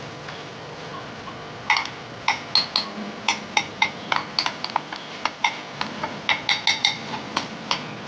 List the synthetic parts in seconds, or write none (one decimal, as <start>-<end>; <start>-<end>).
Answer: 6.8-7.5